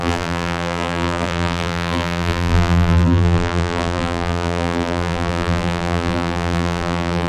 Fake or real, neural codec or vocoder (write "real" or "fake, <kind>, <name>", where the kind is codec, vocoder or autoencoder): fake, vocoder, BigVGAN v2